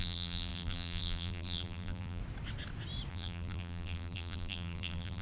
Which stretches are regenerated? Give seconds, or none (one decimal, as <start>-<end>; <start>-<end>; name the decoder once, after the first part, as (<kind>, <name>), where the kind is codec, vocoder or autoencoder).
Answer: 0.0-2.2 (vocoder, BigVGAN v2); 3.1-5.2